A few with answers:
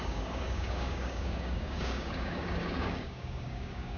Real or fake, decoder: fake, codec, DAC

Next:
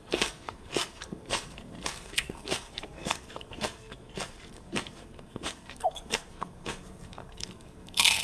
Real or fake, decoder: fake, codec, SNAC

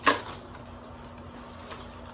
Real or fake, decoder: real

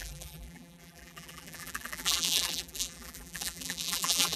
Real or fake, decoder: fake, vocoder, BigVGAN v2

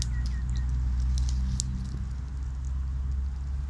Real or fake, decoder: real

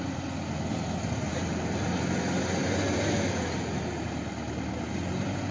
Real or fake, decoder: real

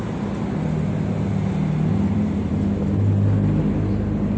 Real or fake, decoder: real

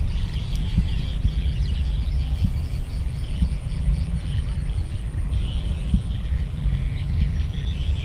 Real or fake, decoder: fake, vocoder, BigVGAN v2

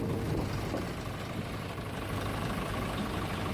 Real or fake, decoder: real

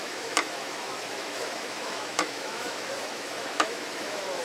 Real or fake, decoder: fake, autoencoder, DAC-VAE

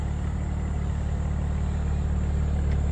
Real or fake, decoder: real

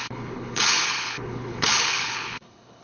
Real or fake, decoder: fake, codec, HILCodec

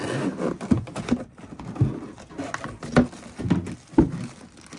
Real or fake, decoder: real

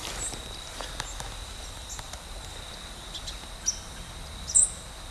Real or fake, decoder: real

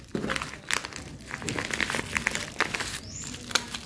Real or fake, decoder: real